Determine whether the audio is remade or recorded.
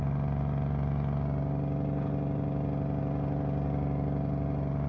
recorded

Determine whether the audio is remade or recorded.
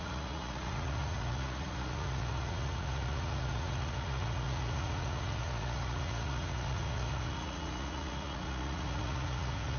remade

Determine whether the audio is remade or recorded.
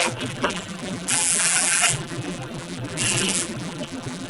remade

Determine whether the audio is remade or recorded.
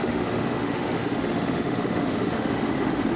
remade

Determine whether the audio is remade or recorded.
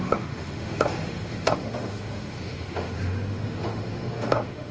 remade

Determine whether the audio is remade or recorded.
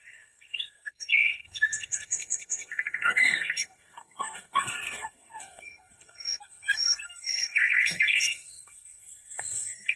remade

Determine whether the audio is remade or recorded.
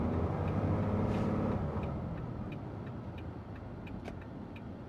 recorded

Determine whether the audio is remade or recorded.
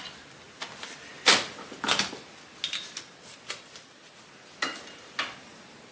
recorded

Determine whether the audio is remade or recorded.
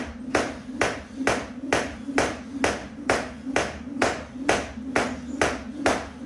recorded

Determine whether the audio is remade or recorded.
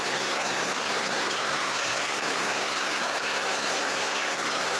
remade